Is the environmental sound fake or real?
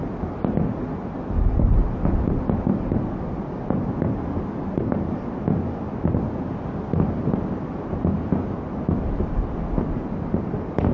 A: real